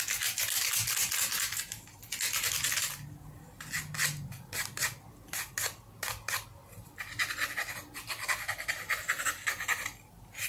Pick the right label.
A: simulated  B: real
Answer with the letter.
B